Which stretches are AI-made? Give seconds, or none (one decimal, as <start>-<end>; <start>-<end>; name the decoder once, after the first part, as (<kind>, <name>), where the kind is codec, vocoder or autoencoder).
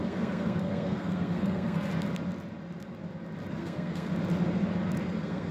0.0-1.9 (codec, SNAC); 3.5-4.1; 5.0-5.5